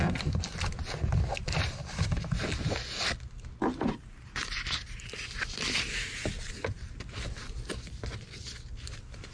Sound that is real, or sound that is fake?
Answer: real